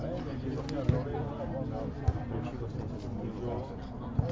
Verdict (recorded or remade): recorded